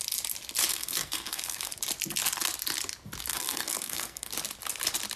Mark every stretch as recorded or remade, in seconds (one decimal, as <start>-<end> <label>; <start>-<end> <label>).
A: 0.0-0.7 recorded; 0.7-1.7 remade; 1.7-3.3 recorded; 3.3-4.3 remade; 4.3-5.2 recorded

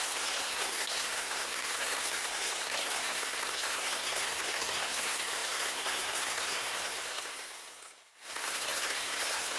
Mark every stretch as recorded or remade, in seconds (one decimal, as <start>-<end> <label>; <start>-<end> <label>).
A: 0.0-9.6 remade

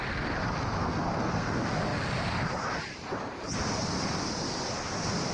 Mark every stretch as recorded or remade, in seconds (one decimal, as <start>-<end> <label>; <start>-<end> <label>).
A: 0.0-0.8 recorded; 0.8-1.5 remade; 1.5-5.3 recorded

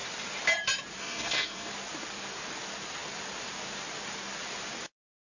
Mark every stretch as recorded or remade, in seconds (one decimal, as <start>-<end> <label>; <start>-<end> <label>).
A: 0.0-1.0 recorded; 1.0-1.7 remade; 1.7-5.2 recorded

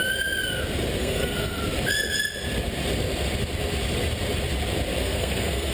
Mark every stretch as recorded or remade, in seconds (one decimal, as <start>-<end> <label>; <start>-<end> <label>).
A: 0.0-1.0 recorded; 1.0-1.6 remade; 1.6-5.0 recorded; 5.0-5.7 remade

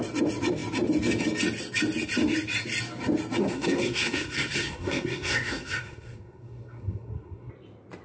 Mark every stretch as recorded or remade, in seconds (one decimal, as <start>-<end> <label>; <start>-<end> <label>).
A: 0.0-3.4 recorded; 3.4-7.5 remade; 7.5-8.0 recorded

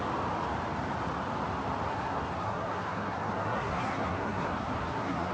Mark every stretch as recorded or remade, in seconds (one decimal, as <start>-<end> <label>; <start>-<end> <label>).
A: 0.0-1.9 recorded; 1.9-5.3 remade

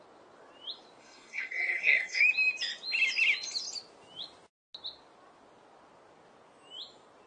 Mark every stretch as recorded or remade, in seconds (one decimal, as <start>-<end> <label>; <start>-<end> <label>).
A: 0.0-1.0 recorded; 1.0-2.2 remade; 2.2-7.3 recorded